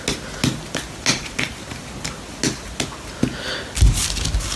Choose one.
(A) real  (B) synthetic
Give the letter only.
A